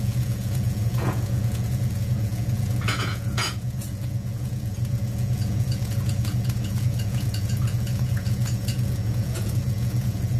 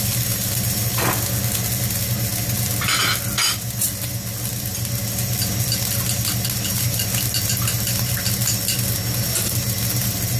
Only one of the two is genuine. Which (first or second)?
second